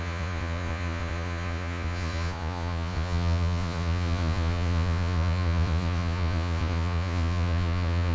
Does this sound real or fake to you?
fake